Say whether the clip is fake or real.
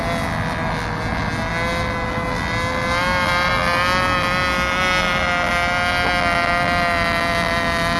real